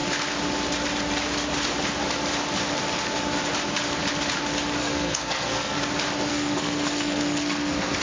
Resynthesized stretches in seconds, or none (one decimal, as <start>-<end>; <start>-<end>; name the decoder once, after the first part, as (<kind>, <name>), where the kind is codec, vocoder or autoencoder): 4.8-5.8 (codec, SNAC); 6.3-8.0